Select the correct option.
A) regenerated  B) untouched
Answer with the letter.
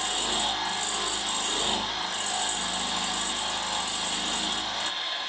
B